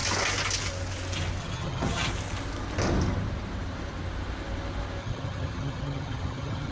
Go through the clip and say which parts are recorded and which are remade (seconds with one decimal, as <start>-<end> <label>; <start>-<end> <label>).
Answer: 0.0-1.4 recorded; 1.4-2.1 remade; 2.1-5.0 recorded; 5.0-6.7 remade